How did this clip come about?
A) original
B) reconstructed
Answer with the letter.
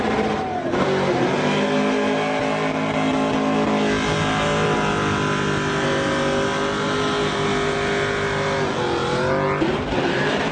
A